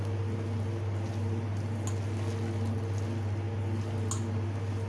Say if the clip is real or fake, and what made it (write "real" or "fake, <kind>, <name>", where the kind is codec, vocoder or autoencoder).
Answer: real